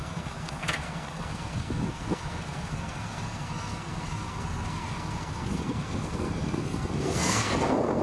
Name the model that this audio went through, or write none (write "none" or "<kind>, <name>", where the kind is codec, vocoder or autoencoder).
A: codec, SNAC